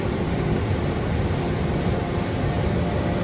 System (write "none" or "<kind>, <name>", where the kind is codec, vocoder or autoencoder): none